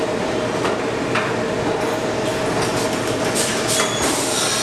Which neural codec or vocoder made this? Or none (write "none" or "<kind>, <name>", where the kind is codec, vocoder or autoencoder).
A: none